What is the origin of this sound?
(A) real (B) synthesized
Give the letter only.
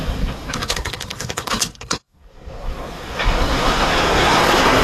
B